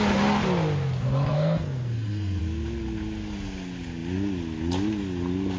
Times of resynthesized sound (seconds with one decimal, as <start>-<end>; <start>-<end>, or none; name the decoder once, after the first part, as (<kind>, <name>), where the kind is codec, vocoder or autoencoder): 1.3-2.4 (codec, SNAC)